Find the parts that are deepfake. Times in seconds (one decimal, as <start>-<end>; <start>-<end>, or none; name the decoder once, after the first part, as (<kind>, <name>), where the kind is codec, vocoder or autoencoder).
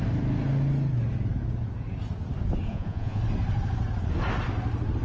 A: 2.7-3.2 (vocoder, Vocos)